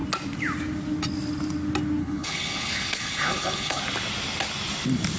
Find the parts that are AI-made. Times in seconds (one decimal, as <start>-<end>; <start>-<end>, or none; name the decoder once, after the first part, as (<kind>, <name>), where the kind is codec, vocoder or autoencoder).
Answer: 2.0-3.8 (codec, HILCodec)